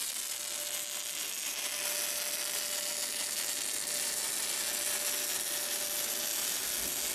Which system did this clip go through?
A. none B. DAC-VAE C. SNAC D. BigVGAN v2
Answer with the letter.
A